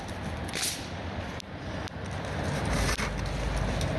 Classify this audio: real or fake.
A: real